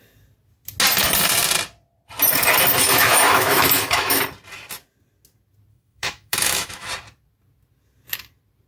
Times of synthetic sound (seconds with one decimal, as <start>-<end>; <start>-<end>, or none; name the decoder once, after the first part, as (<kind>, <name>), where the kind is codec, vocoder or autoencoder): 2.8-4.2 (autoencoder, DAC-VAE); 5.7-6.9